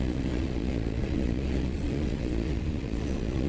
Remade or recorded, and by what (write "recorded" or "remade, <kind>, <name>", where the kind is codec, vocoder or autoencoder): remade, vocoder, Vocos